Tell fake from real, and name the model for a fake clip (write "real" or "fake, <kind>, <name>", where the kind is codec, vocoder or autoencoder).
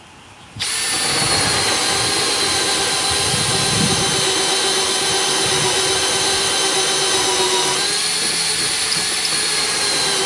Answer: real